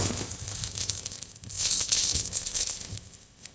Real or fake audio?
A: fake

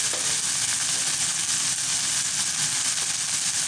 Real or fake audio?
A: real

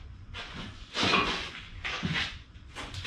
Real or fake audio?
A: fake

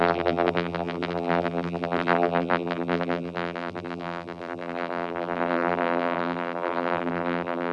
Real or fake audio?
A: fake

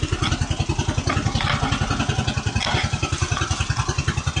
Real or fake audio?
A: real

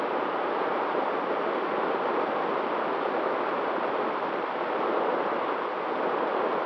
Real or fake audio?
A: real